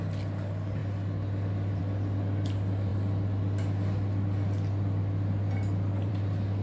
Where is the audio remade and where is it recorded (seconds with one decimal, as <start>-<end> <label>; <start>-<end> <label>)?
0.0-6.6 recorded